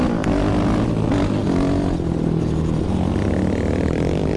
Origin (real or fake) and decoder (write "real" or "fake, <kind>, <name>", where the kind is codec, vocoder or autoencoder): real